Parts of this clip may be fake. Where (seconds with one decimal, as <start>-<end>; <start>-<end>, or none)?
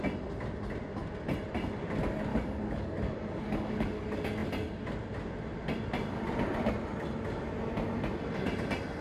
2.3-4.0